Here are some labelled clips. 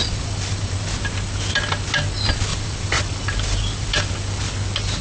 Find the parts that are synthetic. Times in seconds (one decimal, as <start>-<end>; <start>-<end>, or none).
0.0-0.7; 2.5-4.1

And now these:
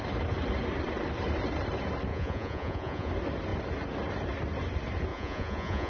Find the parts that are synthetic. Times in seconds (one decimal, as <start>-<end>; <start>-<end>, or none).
2.1-3.1; 5.1-5.9

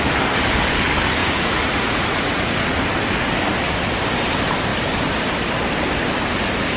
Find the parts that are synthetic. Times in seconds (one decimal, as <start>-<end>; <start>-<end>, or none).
1.2-2.7

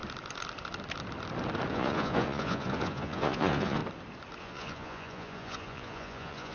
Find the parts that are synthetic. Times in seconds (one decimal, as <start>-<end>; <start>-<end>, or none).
1.7-3.8; 4.4-6.5